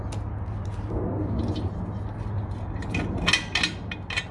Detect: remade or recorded recorded